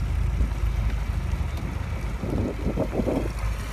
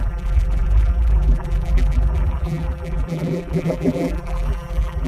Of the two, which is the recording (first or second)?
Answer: first